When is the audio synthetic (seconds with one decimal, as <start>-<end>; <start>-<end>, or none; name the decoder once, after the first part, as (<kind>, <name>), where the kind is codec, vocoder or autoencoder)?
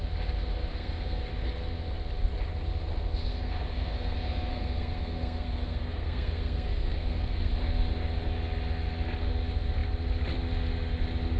0.7-1.3 (codec, SNAC); 3.3-7.5